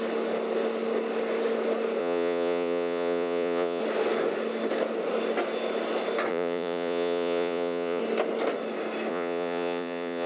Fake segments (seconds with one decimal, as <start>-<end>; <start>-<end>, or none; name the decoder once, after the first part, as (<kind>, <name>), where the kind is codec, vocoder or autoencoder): 2.0-3.8 (vocoder, Vocos); 6.3-8.0; 9.1-10.3